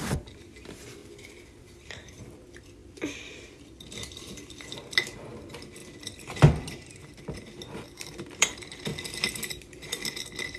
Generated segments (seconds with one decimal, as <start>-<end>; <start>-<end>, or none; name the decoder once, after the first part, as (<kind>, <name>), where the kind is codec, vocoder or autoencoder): 0.0-1.0 (vocoder, BigVGAN v2); 1.6-8.9; 9.5-10.6